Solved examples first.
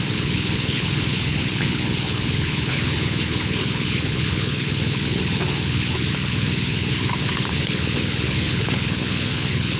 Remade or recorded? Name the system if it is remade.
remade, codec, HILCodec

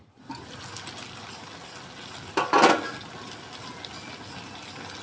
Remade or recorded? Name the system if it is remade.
recorded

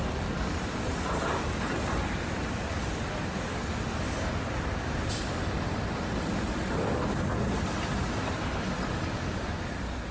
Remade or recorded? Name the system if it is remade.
remade, vocoder, BigVGAN v2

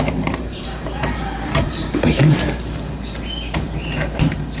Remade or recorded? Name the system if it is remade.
remade, vocoder, BigVGAN v2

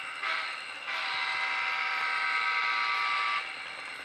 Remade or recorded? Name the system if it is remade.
recorded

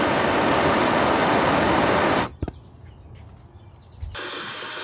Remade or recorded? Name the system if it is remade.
recorded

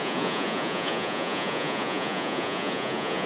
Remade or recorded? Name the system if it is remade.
remade, vocoder, Vocos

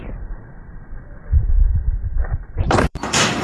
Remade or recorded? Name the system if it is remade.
remade, vocoder, BigVGAN v2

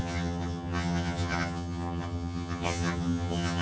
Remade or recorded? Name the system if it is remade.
remade, vocoder, HiFi-GAN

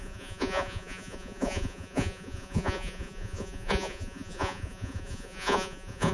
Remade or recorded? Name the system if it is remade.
remade, vocoder, Vocos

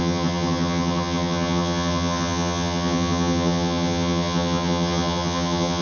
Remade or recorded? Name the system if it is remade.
remade, vocoder, HiFi-GAN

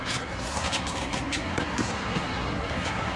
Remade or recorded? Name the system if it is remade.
remade, codec, SNAC